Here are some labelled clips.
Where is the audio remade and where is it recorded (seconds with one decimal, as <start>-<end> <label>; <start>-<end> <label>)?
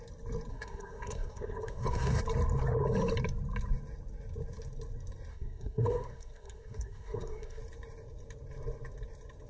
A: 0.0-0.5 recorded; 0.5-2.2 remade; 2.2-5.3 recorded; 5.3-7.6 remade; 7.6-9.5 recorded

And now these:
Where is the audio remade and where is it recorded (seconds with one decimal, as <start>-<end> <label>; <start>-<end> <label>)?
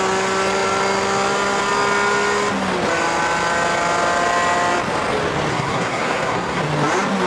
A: 0.0-5.5 recorded; 5.5-6.6 remade; 6.6-7.3 recorded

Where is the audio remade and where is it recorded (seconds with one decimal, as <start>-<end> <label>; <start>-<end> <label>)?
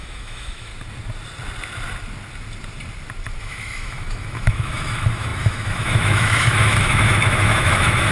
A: 0.0-0.7 remade; 0.7-3.4 recorded; 3.4-8.1 remade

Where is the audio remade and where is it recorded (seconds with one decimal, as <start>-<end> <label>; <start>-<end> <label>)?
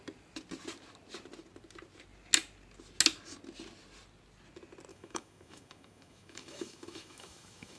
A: 0.0-4.9 recorded; 4.9-7.8 remade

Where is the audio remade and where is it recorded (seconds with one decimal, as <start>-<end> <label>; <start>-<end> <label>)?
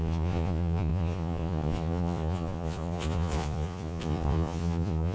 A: 0.0-5.1 remade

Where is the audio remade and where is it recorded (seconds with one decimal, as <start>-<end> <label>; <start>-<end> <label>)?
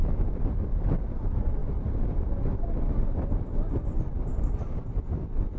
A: 0.0-5.6 recorded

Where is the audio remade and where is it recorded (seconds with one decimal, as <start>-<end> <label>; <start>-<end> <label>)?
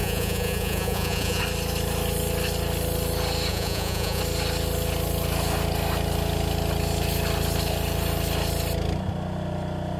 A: 0.0-1.4 remade; 1.4-3.5 recorded; 3.5-4.2 remade; 4.2-10.0 recorded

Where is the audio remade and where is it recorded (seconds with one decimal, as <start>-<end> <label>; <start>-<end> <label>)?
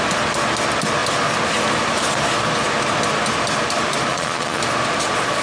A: 0.0-4.1 recorded; 4.1-4.6 remade; 4.6-5.4 recorded